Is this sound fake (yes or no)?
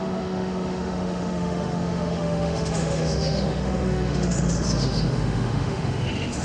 yes